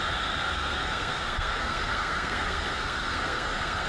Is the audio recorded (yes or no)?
no